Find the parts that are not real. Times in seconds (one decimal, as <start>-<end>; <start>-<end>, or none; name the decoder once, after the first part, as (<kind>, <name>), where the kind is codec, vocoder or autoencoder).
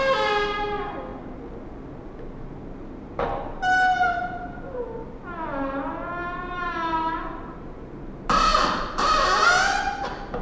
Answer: 6.2-8.0 (vocoder, BigVGAN v2); 8.5-9.3